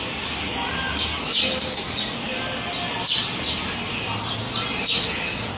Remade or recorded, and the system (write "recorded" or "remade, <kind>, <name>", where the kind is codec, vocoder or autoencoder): recorded